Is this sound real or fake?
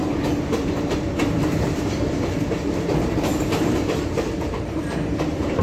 fake